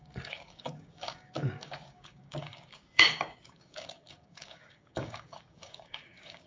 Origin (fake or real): fake